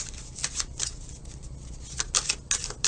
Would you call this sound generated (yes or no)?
no